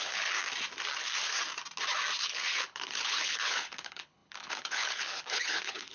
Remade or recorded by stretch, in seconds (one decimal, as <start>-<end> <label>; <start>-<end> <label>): 0.0-0.4 remade; 0.4-2.2 recorded; 2.2-5.9 remade